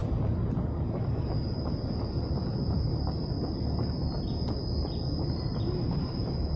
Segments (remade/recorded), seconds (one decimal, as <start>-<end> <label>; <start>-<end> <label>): 0.0-6.6 recorded